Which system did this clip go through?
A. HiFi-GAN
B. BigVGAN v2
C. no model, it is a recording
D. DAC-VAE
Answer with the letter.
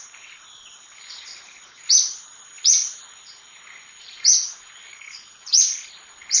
B